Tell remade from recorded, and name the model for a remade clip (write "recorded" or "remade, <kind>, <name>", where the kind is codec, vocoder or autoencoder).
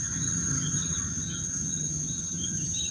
remade, vocoder, HiFi-GAN